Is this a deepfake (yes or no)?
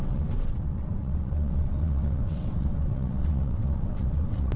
yes